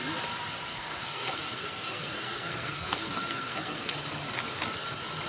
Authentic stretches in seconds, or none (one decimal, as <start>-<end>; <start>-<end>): 0.0-0.7; 3.9-5.3